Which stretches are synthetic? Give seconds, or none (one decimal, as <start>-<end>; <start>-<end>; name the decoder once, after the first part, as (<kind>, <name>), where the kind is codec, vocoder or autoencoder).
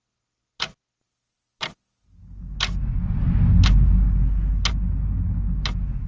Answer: none